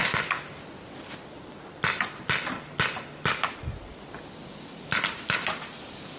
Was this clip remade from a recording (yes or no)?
no